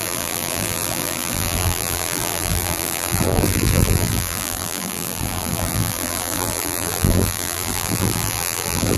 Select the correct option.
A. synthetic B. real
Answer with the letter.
A